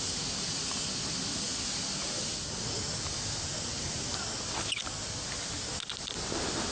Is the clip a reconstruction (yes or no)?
no